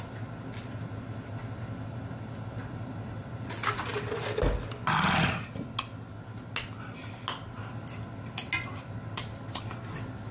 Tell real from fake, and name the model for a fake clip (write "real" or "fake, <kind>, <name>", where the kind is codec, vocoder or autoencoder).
real